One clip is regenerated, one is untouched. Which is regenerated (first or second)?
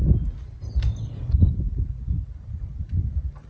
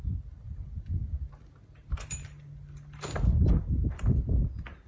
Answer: first